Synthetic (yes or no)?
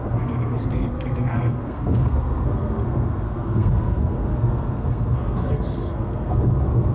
yes